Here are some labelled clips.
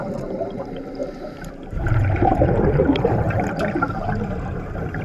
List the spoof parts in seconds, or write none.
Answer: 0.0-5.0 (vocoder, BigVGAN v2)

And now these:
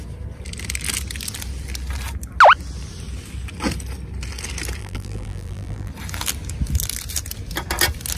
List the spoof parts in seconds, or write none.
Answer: 4.8-5.9 (vocoder, BigVGAN v2)

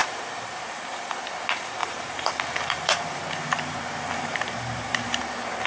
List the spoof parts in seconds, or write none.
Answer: 0.0-1.1 (vocoder, BigVGAN v2); 1.8-5.2

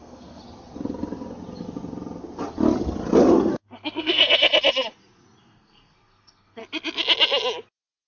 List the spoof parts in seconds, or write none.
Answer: 0.0-0.4 (codec, SNAC); 3.5-4.2; 5.4-6.6

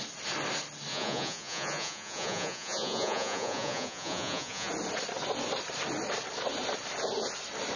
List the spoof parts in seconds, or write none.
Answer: 0.9-4.7 (vocoder, Vocos)